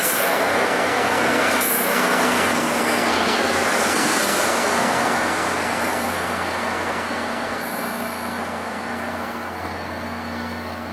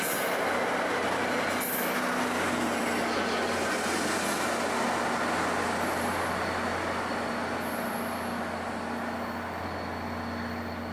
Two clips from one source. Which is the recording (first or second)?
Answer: second